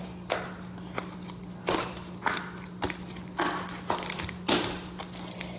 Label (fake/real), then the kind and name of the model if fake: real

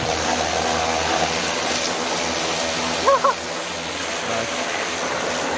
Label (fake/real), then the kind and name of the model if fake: real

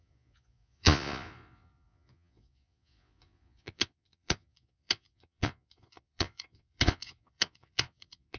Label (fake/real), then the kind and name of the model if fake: fake, vocoder, Vocos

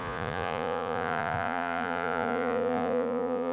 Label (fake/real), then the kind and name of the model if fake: fake, vocoder, Vocos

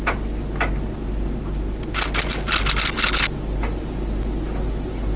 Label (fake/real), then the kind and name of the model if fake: real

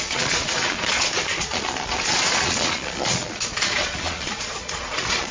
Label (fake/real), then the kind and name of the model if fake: fake, vocoder, Vocos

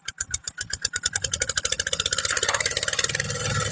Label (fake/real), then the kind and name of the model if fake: real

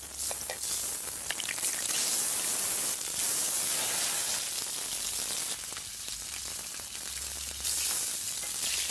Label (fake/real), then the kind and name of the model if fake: real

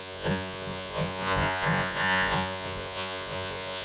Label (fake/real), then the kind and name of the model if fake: fake, vocoder, Vocos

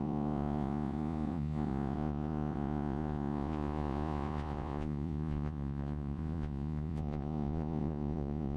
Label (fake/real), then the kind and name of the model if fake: fake, vocoder, Vocos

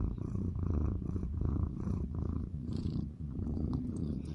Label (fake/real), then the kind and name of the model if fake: fake, vocoder, Vocos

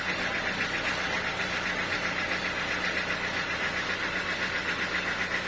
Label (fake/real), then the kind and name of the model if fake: real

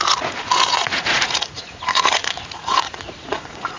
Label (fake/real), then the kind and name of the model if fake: fake, vocoder, Vocos